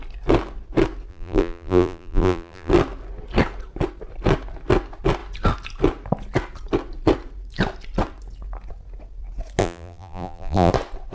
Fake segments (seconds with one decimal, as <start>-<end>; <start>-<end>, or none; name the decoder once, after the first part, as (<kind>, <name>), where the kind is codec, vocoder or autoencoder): 1.1-2.7 (vocoder, BigVGAN v2); 9.6-10.7